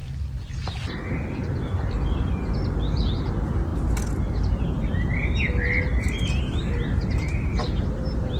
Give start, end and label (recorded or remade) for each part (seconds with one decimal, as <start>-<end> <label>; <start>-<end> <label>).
0.0-8.4 recorded